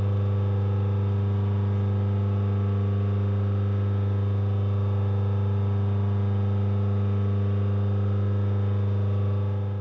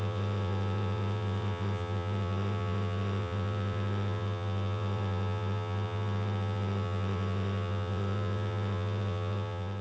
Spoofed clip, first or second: second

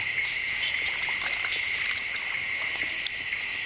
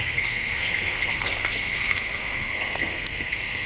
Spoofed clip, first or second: second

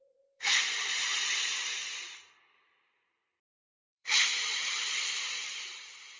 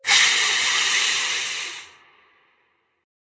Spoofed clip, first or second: first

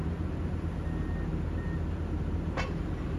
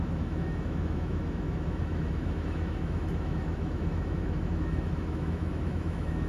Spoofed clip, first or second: second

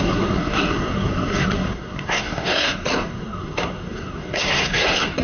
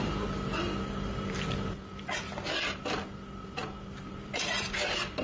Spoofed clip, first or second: first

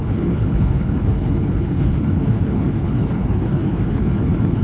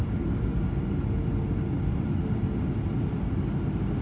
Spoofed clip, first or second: first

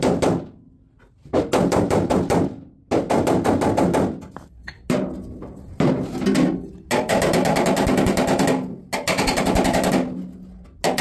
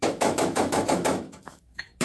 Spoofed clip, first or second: second